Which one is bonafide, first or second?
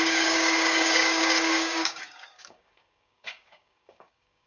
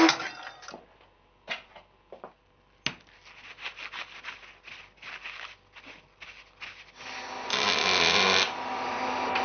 second